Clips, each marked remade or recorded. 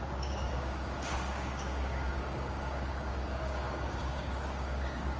remade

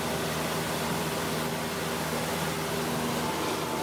recorded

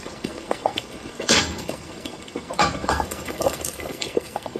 remade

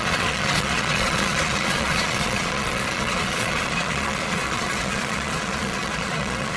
remade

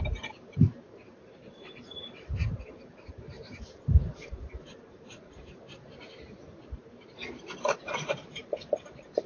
remade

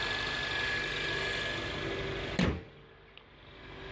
recorded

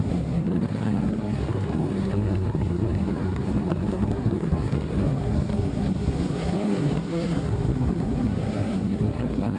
remade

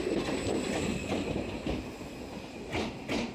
recorded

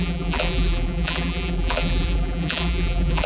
remade